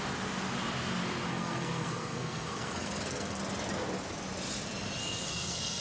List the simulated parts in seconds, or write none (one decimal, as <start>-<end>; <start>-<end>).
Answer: 1.3-3.4; 5.0-5.8